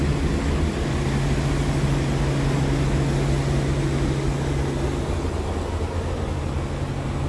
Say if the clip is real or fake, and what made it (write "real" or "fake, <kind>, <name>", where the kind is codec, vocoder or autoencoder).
real